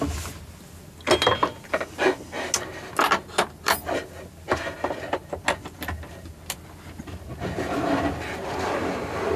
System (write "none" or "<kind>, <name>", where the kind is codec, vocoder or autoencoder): none